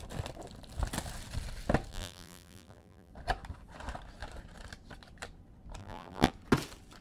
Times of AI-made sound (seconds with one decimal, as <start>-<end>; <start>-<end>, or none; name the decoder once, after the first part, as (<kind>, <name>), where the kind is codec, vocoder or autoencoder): 1.9-3.1 (vocoder, BigVGAN v2); 5.8-6.3